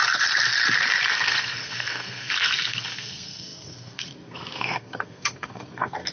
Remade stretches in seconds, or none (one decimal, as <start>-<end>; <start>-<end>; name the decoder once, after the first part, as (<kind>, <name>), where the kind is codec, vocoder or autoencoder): 1.1-6.1 (codec, SNAC)